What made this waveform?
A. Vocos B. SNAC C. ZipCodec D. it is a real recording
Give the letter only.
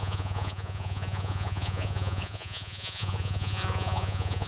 A